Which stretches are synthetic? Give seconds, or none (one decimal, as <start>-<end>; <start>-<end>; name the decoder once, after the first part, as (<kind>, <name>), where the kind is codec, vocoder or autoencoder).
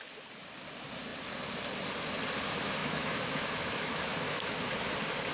2.8-4.6 (autoencoder, DAC-VAE)